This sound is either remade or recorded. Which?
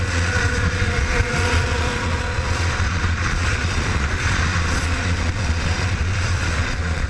remade